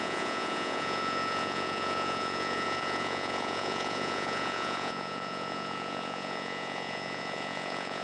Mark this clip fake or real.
fake